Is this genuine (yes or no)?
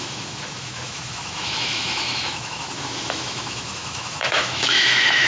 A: no